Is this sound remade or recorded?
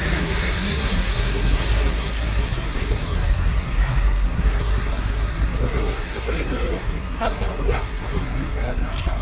remade